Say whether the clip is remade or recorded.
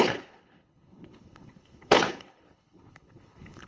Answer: remade